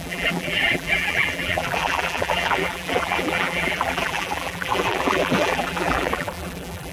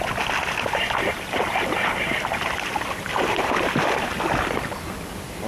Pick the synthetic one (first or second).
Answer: first